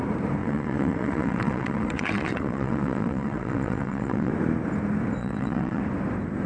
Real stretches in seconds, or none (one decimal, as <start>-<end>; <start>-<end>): 0.0-0.4; 4.3-5.2; 5.8-6.5